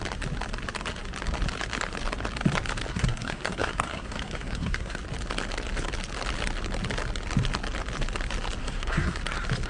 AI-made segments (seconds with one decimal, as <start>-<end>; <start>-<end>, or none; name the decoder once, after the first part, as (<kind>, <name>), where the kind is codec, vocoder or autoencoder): 2.9-5.0 (codec, SNAC); 8.6-9.2